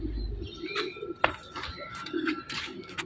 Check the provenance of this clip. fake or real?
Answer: real